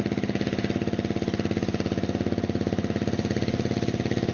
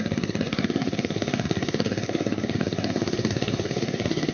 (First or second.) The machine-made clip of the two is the second